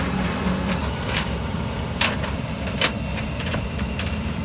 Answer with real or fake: fake